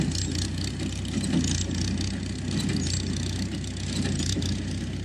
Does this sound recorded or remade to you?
recorded